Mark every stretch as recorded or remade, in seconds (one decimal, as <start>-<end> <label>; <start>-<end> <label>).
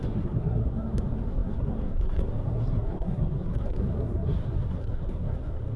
0.0-5.8 remade